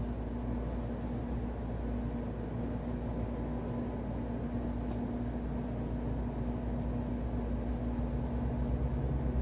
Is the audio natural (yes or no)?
yes